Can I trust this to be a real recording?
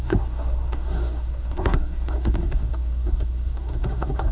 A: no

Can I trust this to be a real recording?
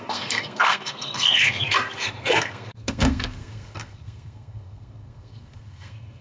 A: no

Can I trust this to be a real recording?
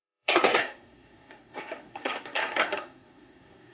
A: no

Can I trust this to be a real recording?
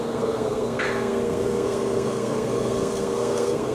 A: no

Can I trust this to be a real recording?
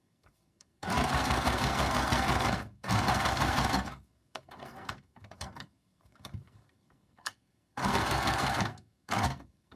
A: no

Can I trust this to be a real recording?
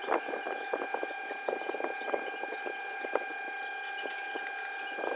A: yes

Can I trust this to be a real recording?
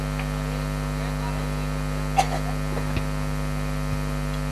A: yes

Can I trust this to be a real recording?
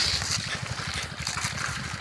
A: yes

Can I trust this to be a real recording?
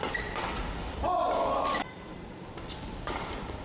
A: yes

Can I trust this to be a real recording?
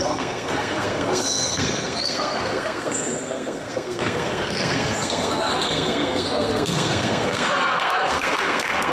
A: no